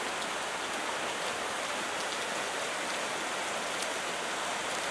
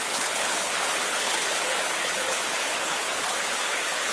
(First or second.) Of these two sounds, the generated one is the second